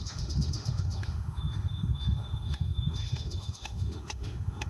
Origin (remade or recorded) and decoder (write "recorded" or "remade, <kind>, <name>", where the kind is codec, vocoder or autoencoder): remade, autoencoder, DAC-VAE